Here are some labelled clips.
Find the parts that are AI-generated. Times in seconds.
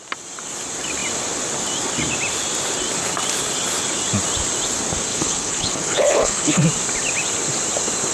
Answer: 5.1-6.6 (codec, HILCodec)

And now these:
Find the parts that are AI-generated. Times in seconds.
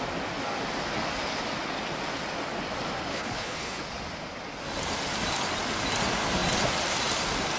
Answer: 3.1-3.8 (codec, HILCodec)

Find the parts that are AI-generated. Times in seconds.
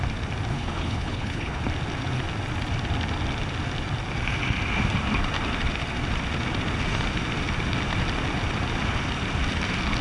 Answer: 0.5-1.6 (codec, HILCodec)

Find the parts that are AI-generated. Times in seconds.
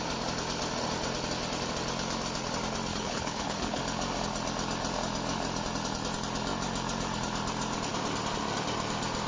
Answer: 2.9-3.8 (codec, HILCodec)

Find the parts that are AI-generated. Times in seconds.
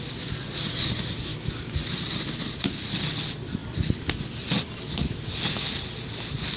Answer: none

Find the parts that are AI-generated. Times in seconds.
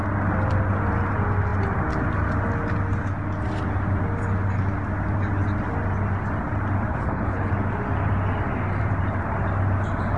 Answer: 6.9-7.5 (codec, HILCodec)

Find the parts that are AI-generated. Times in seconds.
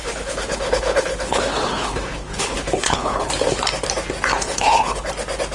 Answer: 0.0-3.3 (codec, HILCodec); 4.3-5.1